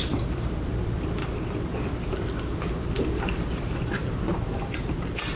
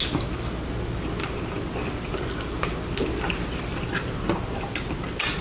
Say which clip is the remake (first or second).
first